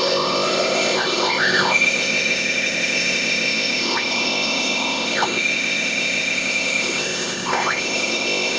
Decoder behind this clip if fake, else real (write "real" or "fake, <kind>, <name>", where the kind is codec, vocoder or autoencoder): fake, codec, ZipCodec